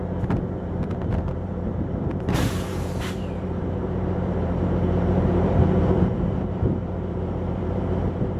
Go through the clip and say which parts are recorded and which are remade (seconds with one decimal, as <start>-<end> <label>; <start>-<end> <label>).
0.0-0.7 recorded; 0.7-8.4 remade